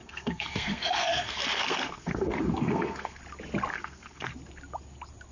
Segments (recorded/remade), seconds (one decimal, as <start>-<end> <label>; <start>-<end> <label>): 0.0-3.2 remade; 3.2-3.7 recorded; 3.7-4.3 remade; 4.3-5.3 recorded